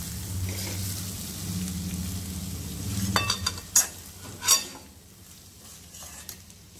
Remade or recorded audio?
recorded